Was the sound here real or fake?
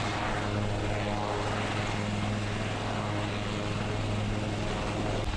real